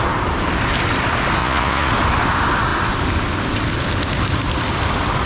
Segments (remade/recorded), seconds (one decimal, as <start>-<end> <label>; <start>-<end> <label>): 0.0-1.4 recorded; 1.4-1.9 remade; 1.9-5.3 recorded